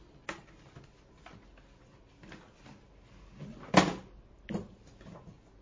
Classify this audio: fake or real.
real